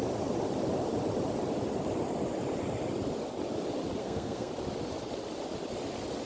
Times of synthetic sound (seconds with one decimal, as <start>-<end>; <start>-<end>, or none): 4.0-4.5